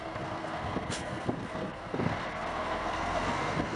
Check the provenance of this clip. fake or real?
fake